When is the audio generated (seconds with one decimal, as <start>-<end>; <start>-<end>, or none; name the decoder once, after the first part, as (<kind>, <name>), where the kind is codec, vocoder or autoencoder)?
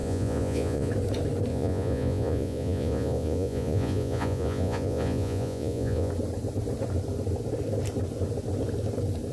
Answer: 0.0-0.9 (vocoder, Vocos); 1.5-6.1